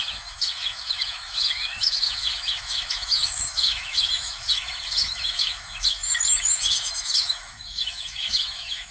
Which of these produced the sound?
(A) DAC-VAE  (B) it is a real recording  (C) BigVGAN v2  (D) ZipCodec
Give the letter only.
A